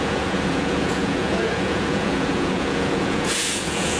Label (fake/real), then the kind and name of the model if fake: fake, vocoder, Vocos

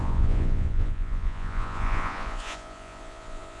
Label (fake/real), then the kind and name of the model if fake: fake, vocoder, Vocos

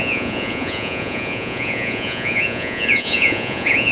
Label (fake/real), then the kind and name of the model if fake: fake, vocoder, Vocos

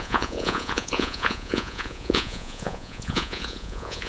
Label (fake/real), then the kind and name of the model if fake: fake, vocoder, Vocos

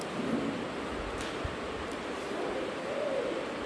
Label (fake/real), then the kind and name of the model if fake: real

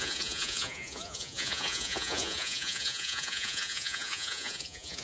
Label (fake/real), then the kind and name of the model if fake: fake, vocoder, Vocos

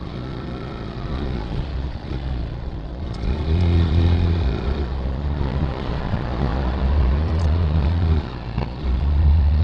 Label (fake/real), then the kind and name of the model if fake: fake, vocoder, Vocos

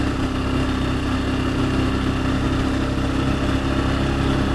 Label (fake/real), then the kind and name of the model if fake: real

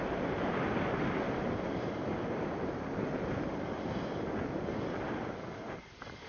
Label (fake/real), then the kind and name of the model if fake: real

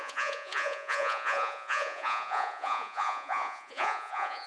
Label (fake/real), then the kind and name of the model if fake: fake, vocoder, Vocos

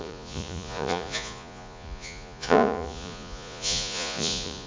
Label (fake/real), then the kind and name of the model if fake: fake, vocoder, Vocos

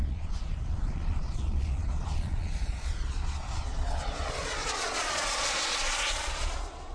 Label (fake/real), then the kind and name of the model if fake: fake, vocoder, Vocos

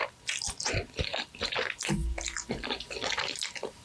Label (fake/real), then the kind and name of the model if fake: real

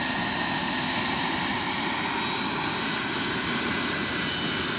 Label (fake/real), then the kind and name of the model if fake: real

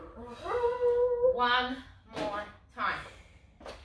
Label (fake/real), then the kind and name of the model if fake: real